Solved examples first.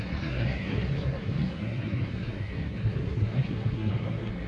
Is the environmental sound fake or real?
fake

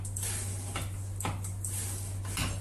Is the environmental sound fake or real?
real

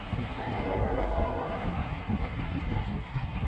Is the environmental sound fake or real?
fake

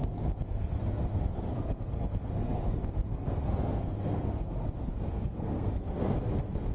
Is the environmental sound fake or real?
fake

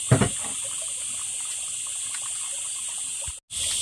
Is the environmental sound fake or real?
real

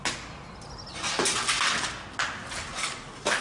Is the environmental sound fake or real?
real